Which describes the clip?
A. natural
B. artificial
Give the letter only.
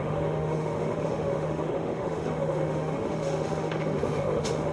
B